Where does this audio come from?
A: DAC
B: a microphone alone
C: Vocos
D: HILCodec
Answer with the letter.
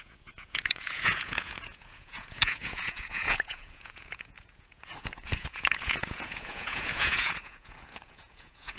C